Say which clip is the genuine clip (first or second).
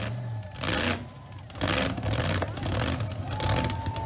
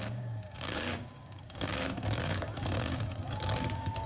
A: first